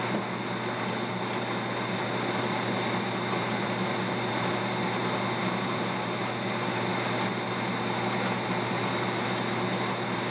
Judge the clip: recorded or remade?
recorded